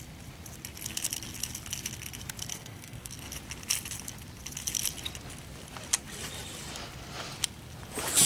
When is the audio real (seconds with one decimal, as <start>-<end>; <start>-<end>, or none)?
0.0-2.5; 3.1-8.3